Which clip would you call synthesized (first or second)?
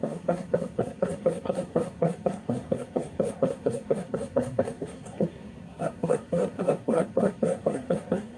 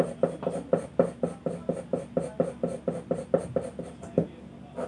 first